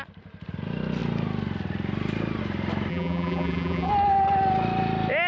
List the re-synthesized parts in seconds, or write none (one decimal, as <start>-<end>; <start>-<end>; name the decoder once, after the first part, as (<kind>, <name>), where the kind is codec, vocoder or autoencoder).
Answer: 2.9-3.9 (vocoder, BigVGAN v2)